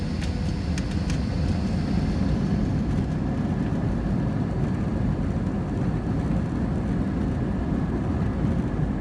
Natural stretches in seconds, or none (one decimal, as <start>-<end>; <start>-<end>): 0.0-9.0